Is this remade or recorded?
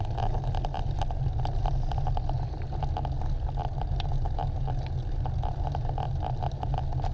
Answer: recorded